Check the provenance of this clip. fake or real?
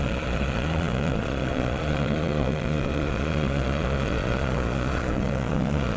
fake